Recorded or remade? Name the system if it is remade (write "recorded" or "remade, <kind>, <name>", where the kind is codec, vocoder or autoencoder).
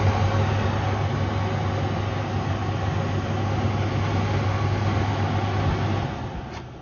recorded